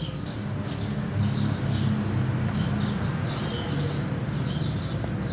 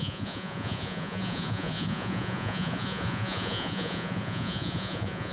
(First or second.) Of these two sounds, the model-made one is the second